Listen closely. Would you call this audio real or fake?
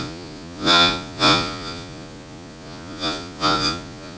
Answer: fake